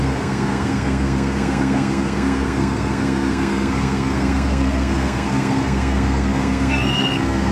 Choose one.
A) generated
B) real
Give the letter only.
A